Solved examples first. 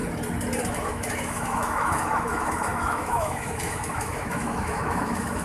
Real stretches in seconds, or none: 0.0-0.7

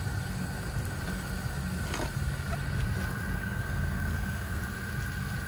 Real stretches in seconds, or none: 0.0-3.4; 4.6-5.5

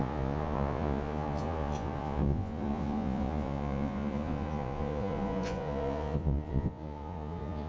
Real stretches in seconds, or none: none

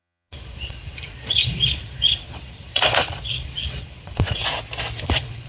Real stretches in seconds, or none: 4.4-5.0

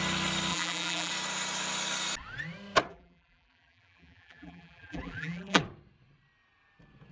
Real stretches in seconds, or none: 0.0-0.5; 1.1-2.9; 5.6-7.1

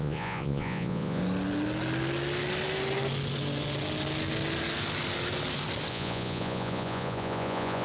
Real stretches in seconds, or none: 1.2-5.9